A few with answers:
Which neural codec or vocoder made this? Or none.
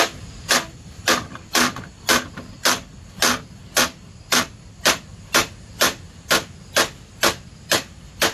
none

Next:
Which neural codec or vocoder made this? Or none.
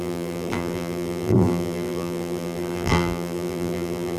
vocoder, BigVGAN v2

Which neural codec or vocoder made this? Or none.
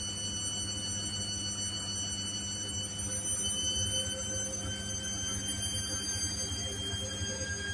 none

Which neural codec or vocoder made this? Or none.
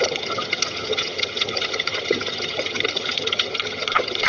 vocoder, HiFi-GAN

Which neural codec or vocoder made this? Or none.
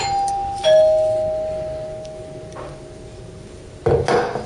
none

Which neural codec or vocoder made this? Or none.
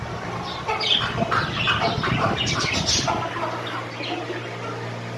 none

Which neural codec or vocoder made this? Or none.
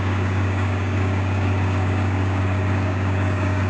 codec, DAC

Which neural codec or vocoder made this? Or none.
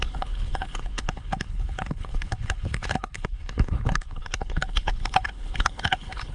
codec, HILCodec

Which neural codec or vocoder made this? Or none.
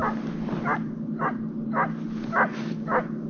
none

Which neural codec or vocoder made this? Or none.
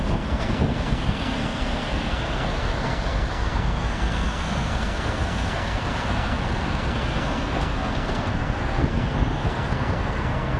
codec, SNAC